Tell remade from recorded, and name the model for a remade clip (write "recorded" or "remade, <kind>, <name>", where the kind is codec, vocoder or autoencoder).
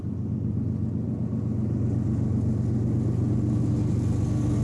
recorded